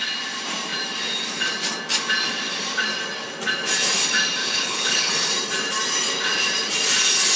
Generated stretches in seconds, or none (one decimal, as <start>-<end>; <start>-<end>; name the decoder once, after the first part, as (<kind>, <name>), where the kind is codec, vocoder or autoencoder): 4.4-5.1 (codec, HILCodec)